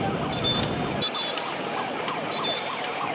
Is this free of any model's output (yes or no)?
no